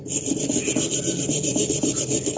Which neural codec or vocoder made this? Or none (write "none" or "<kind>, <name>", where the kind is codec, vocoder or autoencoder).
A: none